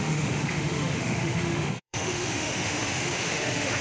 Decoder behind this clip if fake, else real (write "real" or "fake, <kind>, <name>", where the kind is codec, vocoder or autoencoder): fake, autoencoder, DAC-VAE